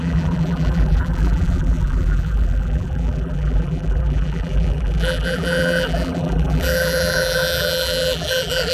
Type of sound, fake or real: fake